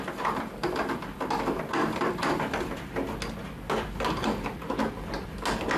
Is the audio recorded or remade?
recorded